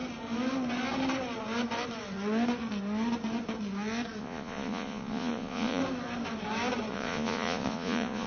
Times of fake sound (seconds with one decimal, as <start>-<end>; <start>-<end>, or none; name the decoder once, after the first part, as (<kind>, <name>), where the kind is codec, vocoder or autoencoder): 4.2-5.8 (vocoder, Vocos); 6.9-8.3